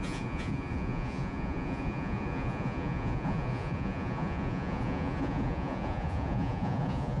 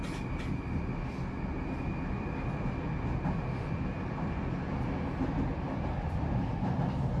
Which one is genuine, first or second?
second